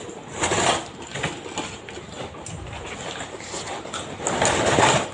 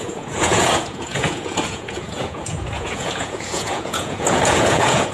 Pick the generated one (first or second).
second